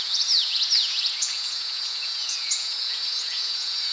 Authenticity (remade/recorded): remade